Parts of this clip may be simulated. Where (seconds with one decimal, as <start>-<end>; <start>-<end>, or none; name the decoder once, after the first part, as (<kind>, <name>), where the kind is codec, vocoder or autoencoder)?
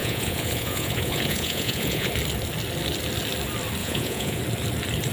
0.0-2.1 (vocoder, Vocos); 3.8-4.4